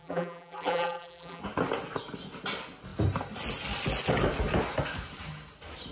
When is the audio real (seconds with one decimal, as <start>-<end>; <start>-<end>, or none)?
1.4-5.9